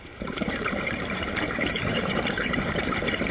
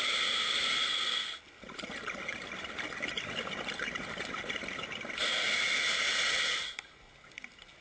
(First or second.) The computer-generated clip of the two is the first